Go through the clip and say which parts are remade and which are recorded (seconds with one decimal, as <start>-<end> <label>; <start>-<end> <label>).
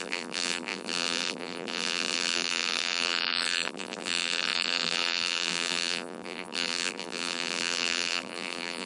0.0-8.9 remade